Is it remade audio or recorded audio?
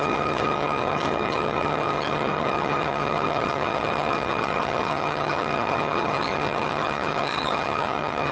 remade